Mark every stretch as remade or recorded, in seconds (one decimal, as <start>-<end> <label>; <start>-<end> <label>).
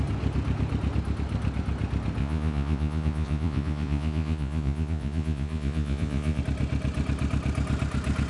0.0-2.2 recorded; 2.2-6.4 remade; 6.4-8.3 recorded